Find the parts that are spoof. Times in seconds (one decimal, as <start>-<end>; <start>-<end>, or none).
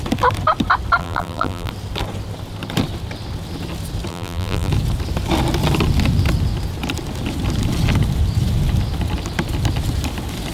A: 1.0-1.7; 4.1-4.7